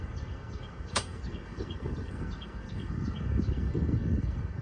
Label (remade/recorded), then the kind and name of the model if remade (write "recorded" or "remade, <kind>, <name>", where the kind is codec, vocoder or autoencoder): remade, codec, SNAC